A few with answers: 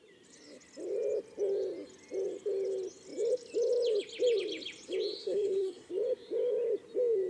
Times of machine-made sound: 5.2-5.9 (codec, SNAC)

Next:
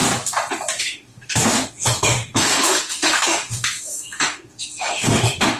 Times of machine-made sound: 0.8-5.6 (autoencoder, DAC-VAE)

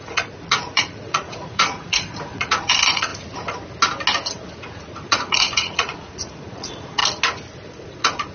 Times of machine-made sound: 0.0-3.1 (vocoder, Vocos); 4.5-7.0; 7.8-8.3

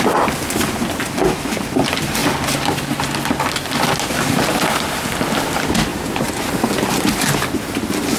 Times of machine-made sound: 5.9-6.5 (vocoder, BigVGAN v2)